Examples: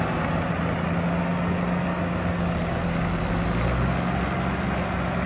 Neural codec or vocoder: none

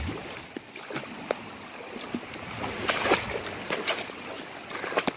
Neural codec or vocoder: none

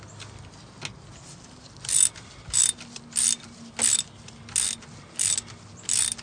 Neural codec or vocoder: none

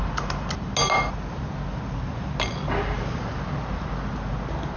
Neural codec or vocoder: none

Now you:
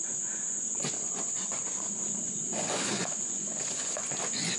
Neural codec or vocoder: vocoder, Vocos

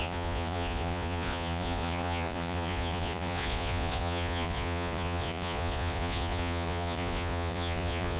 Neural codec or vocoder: vocoder, Vocos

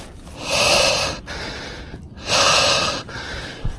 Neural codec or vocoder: none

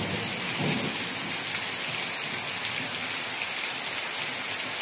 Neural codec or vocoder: none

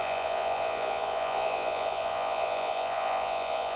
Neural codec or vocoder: vocoder, Vocos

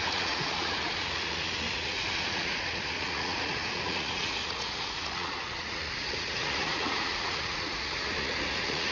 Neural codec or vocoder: vocoder, Vocos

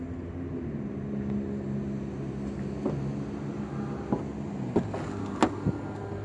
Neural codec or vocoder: none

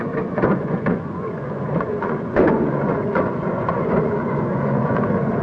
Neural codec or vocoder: vocoder, Vocos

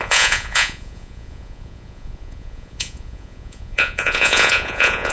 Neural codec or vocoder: vocoder, Vocos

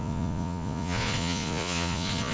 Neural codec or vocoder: vocoder, Vocos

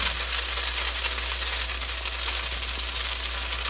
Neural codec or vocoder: none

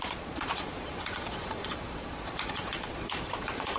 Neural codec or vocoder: vocoder, Vocos